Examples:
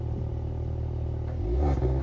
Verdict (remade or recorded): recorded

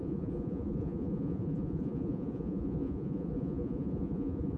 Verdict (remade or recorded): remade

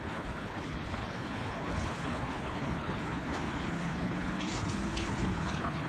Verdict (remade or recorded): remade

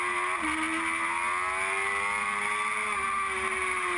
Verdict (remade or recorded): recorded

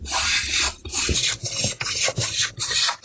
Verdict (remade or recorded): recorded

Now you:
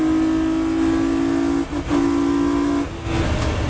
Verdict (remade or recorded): recorded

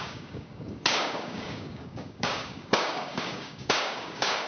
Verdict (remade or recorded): remade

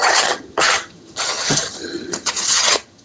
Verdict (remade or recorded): remade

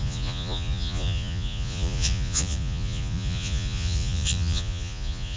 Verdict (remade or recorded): remade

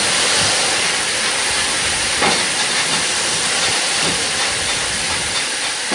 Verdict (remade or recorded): recorded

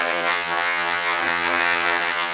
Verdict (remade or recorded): remade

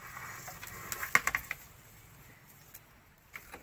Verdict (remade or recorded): recorded